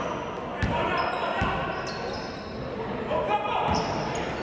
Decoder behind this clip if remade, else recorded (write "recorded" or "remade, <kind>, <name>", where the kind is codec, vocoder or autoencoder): recorded